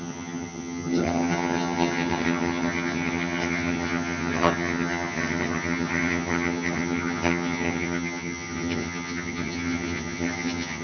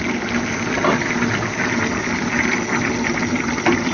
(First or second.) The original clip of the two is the second